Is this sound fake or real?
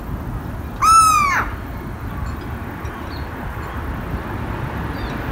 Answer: real